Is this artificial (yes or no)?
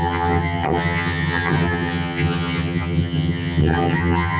yes